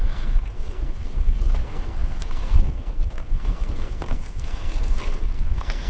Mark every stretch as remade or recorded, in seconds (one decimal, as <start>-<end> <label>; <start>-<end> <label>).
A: 0.0-5.9 remade